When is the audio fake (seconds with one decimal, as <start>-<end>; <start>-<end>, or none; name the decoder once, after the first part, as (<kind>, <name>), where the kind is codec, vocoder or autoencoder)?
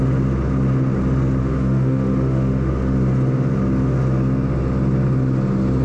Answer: 1.4-2.7 (autoencoder, DAC-VAE)